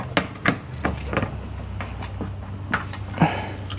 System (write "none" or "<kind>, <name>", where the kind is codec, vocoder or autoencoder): none